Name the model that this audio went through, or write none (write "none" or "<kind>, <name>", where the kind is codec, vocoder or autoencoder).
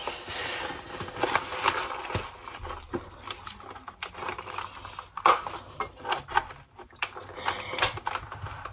none